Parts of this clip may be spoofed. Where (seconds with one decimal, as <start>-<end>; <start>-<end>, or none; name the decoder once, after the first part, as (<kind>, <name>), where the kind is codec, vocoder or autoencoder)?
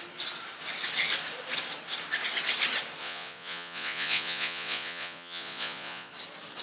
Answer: 3.0-6.1 (vocoder, Vocos)